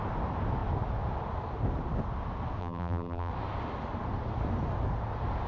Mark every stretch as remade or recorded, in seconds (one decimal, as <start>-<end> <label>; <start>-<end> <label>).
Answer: 0.0-2.6 recorded; 2.6-3.3 remade; 3.3-5.5 recorded

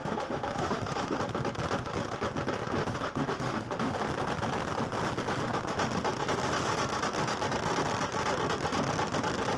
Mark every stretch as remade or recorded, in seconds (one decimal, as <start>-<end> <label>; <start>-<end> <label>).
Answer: 0.0-1.2 remade; 1.2-2.8 recorded; 2.8-4.0 remade; 4.0-9.6 recorded

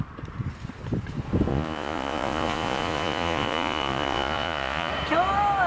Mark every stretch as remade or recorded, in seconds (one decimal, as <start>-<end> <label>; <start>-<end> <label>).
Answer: 0.0-1.5 recorded; 1.5-4.9 remade; 4.9-5.7 recorded

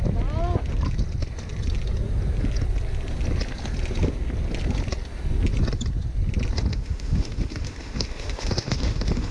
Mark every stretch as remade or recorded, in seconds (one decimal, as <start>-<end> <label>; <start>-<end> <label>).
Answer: 0.0-6.7 recorded; 6.7-9.3 remade